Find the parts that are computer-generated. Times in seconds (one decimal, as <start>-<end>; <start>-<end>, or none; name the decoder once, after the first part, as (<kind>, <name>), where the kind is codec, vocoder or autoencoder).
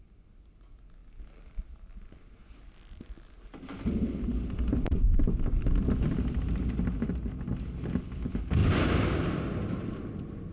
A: none